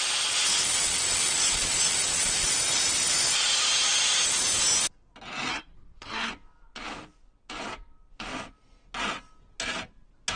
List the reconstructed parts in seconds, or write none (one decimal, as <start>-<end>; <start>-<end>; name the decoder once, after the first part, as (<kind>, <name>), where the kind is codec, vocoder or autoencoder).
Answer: 5.5-6.3 (codec, SNAC)